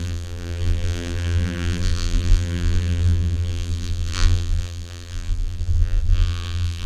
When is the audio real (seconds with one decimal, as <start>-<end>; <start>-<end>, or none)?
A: none